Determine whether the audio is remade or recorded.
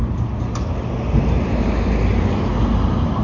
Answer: recorded